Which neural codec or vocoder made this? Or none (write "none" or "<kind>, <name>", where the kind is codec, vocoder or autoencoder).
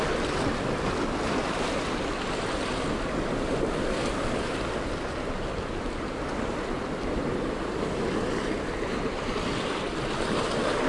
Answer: none